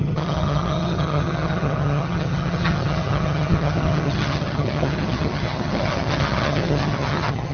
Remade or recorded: remade